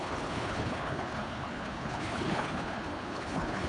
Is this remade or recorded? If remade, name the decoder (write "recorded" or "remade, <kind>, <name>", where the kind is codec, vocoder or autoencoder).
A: remade, codec, HILCodec